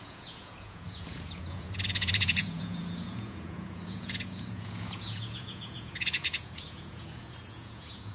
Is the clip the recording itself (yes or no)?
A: no